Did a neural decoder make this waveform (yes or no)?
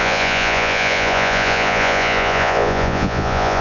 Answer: yes